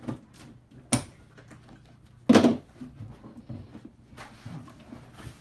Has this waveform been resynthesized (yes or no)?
no